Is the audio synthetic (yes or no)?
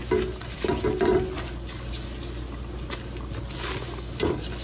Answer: no